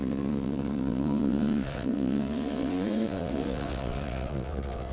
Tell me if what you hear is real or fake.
fake